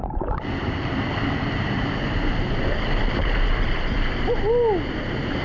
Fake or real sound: real